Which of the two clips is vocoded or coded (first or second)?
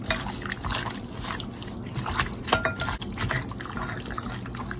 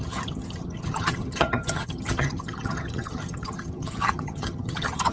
second